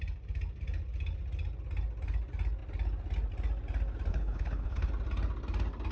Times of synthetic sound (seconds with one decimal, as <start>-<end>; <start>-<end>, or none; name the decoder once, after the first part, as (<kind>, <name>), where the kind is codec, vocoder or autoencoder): 4.1-4.9 (codec, HILCodec)